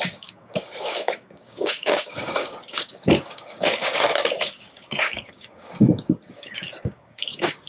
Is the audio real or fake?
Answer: fake